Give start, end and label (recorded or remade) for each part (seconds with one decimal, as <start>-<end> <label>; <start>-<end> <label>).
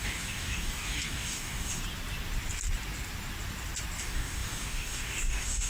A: 0.0-1.8 remade; 1.8-4.0 recorded; 4.0-5.7 remade